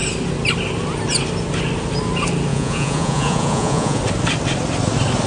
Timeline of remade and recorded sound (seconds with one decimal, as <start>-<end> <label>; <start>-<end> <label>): 0.0-2.5 recorded; 2.5-4.0 remade; 4.0-5.3 recorded